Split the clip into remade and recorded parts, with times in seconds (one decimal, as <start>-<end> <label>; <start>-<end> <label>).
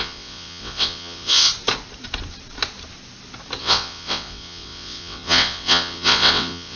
0.0-1.5 remade; 1.5-3.6 recorded; 3.6-6.8 remade